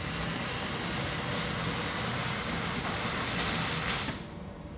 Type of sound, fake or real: real